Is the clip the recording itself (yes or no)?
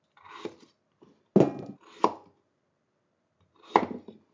yes